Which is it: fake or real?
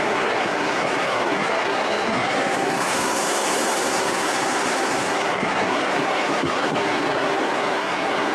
fake